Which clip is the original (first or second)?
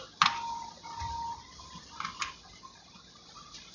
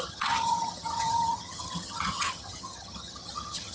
first